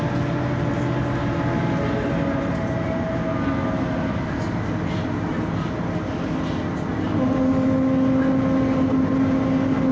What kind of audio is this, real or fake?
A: real